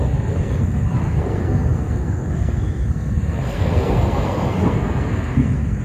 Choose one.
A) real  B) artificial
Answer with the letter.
B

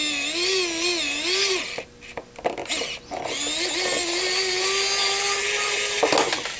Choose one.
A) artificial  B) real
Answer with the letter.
B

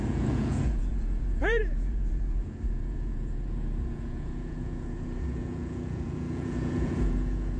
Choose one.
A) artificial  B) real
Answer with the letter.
A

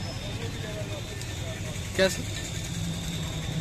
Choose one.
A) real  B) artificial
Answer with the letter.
A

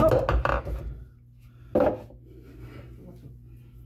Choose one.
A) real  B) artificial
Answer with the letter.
A